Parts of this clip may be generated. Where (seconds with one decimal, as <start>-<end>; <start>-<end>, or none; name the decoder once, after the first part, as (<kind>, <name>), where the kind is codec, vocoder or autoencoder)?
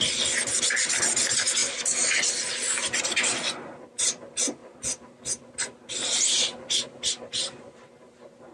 none